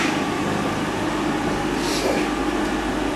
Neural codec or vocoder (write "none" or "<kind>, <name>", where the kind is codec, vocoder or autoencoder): none